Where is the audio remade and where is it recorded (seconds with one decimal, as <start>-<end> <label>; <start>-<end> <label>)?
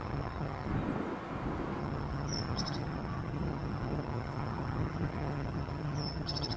0.0-0.7 remade; 0.7-1.8 recorded; 1.8-6.6 remade